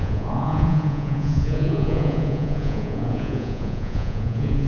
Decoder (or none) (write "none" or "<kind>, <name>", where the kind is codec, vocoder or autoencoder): vocoder, Vocos